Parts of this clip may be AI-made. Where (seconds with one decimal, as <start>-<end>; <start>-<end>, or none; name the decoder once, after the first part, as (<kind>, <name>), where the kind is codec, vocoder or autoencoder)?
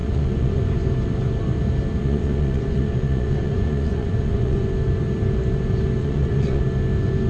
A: 0.0-0.6 (vocoder, Vocos); 2.0-4.6; 6.0-6.6